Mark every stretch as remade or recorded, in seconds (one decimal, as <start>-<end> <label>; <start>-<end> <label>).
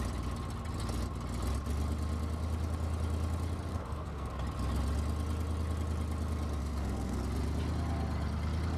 0.0-3.7 recorded; 3.7-4.4 remade; 4.4-6.6 recorded; 6.6-7.2 remade; 7.2-8.8 recorded